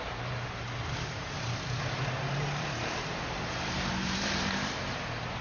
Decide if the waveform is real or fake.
fake